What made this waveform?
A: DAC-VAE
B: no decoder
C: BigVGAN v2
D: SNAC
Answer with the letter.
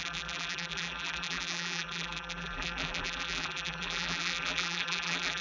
C